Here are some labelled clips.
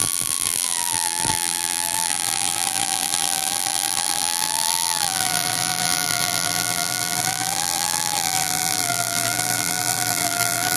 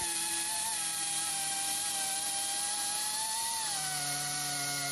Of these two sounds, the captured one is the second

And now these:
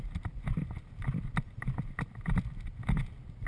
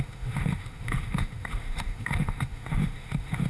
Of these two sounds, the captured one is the first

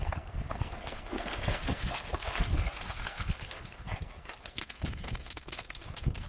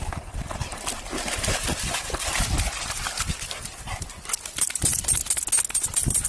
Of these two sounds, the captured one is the second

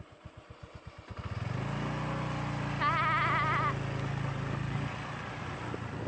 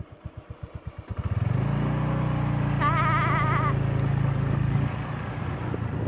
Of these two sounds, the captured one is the first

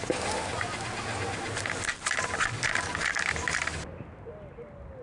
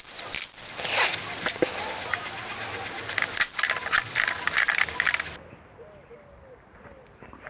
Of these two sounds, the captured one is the first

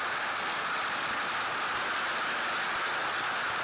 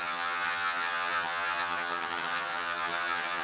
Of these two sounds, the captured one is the first